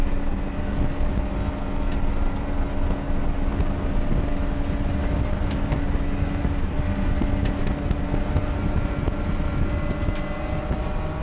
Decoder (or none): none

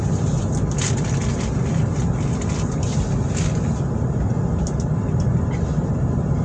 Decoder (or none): none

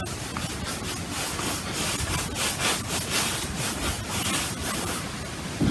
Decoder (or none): none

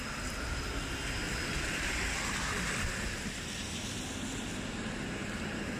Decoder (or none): none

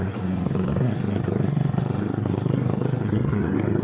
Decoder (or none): codec, SNAC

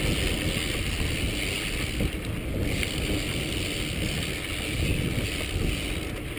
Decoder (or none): none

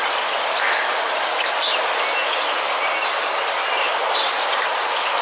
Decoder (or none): none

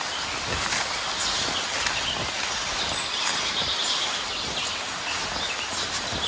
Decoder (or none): none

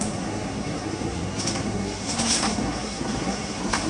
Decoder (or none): codec, SNAC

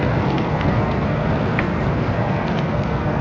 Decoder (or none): codec, SNAC